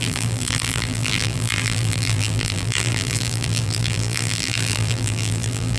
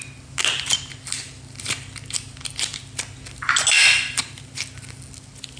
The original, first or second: second